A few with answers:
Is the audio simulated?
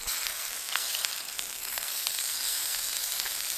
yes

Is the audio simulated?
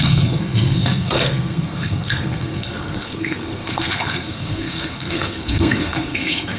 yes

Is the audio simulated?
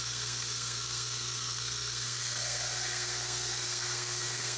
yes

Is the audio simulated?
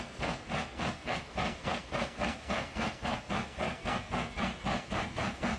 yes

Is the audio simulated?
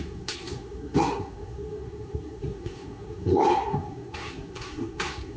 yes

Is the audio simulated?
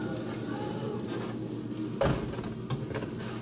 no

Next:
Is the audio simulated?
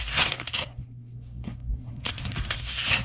yes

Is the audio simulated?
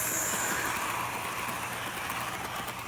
no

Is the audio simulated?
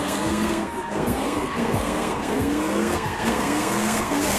yes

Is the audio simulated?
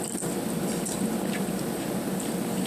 no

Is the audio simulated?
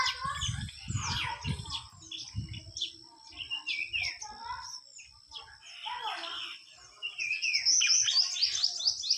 no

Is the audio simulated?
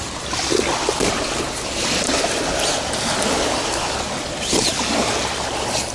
no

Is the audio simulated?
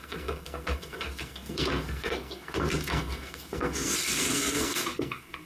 yes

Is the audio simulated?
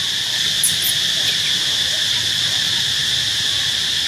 no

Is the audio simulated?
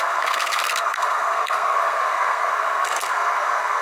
yes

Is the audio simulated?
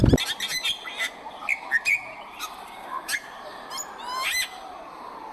no